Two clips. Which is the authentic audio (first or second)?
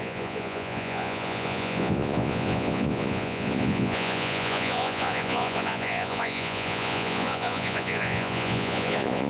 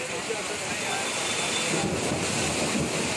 second